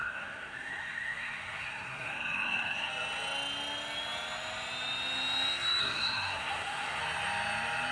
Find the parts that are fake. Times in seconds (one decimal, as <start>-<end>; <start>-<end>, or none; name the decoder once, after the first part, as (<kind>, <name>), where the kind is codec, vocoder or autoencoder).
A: 0.0-2.9 (codec, SNAC); 5.8-7.0